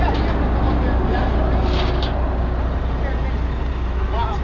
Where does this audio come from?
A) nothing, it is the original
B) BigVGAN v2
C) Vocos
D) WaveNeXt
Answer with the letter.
A